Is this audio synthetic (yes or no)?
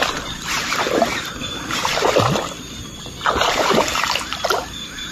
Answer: no